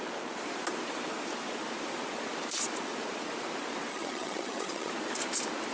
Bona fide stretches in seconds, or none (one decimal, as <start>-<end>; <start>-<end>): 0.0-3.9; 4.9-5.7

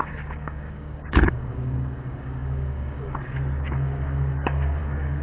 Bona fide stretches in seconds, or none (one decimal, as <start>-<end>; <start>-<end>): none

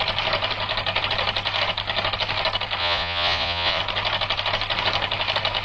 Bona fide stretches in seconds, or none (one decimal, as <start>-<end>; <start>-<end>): 0.0-2.8; 3.8-5.6

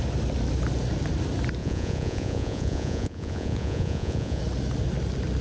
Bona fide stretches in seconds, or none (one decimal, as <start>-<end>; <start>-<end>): 0.0-1.6; 4.4-5.4